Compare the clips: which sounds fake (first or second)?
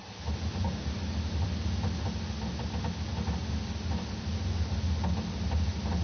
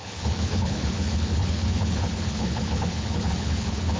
second